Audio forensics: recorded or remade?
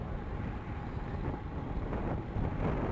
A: recorded